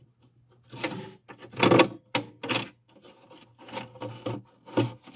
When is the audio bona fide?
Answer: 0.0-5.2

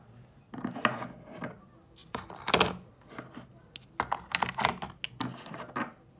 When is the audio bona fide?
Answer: 0.0-6.2

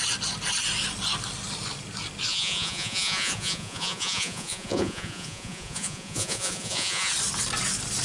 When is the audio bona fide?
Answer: 0.0-2.3; 7.1-8.0

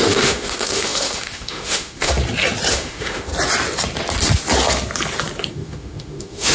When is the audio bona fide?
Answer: 2.1-2.7; 3.3-5.5

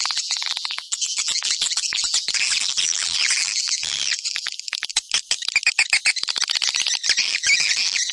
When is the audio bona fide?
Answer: 4.9-7.2

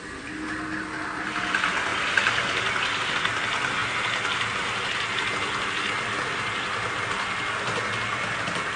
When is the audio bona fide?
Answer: 0.0-8.8

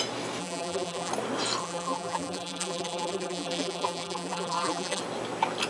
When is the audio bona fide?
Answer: 0.0-0.4; 1.1-1.6; 5.0-5.7